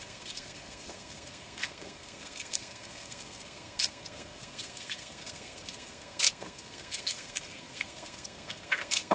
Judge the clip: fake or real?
fake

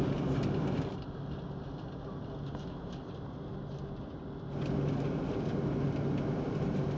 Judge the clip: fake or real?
real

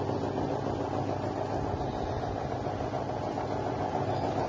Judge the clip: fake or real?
real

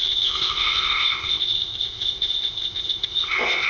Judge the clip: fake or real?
fake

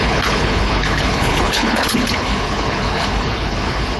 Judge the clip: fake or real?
fake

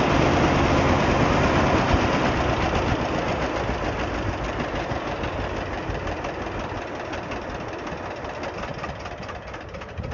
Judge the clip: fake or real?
real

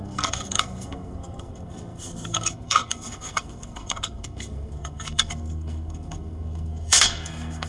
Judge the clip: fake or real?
fake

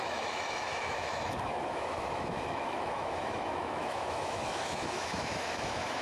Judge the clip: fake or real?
fake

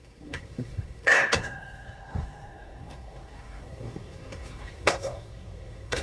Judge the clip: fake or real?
fake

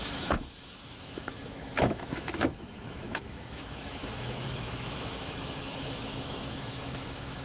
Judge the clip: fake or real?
fake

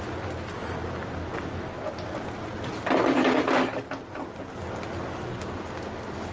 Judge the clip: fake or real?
real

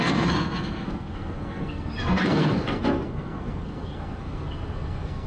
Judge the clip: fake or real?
fake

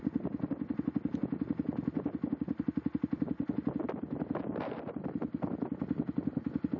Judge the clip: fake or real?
real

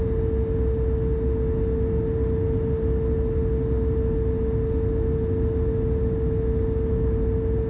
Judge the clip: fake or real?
real